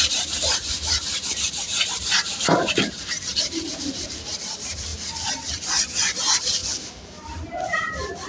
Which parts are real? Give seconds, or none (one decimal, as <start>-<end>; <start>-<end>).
none

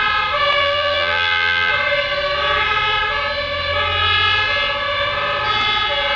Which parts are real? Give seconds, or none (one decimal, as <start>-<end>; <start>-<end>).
0.0-0.6; 1.7-6.2

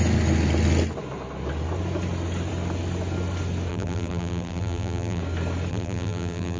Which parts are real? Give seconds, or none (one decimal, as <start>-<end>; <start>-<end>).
0.0-3.7; 5.2-5.7

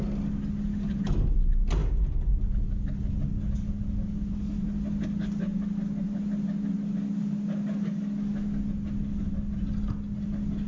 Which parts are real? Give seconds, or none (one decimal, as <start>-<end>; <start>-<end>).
0.0-10.7

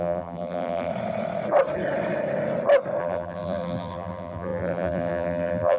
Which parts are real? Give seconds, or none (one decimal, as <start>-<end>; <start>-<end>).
0.9-3.0

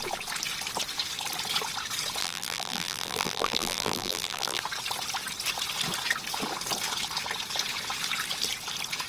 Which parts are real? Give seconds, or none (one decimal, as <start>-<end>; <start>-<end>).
0.0-2.2; 4.6-9.1

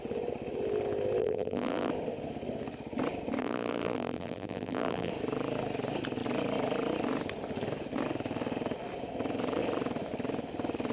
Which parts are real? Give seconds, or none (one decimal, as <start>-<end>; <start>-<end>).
0.0-1.2; 1.9-3.4; 5.1-10.9